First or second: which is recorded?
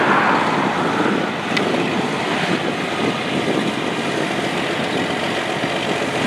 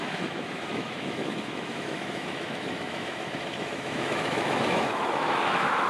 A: first